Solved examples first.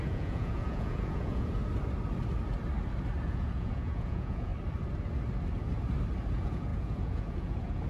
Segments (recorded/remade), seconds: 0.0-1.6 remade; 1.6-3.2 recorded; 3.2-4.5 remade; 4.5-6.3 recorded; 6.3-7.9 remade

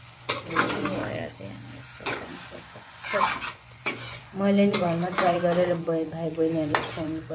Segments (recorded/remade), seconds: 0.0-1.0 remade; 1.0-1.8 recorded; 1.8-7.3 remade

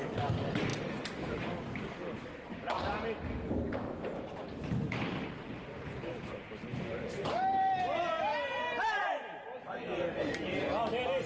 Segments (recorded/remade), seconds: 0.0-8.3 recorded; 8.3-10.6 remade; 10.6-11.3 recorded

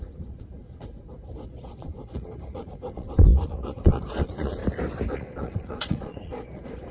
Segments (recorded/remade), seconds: 0.0-4.6 remade; 4.6-5.1 recorded; 5.1-6.9 remade

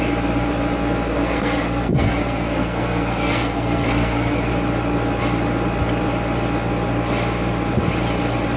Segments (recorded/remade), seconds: 0.0-1.1 recorded; 1.1-4.5 remade; 4.5-8.6 recorded

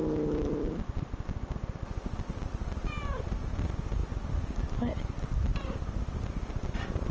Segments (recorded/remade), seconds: 0.0-7.1 remade